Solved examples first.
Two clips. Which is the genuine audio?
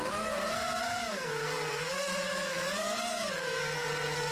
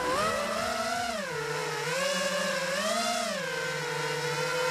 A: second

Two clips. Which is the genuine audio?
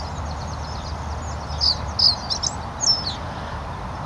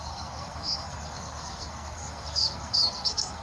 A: first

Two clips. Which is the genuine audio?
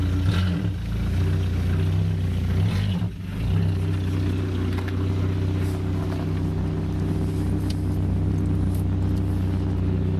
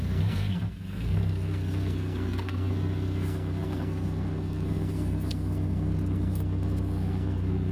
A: first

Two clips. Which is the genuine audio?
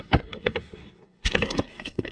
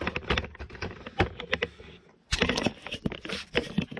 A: second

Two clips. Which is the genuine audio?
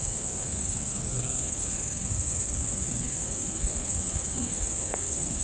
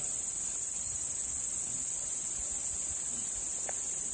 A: second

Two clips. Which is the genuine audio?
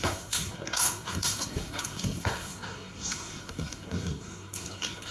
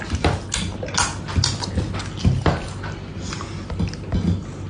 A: second